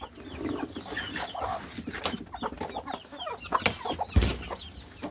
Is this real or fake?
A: real